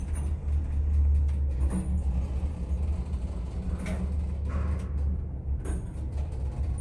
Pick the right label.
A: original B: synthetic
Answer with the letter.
A